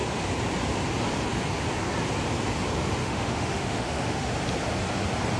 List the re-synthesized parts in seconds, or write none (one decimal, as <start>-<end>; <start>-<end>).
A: 3.0-4.3